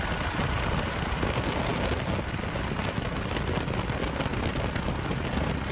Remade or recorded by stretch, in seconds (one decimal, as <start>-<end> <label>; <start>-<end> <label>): 0.0-5.7 recorded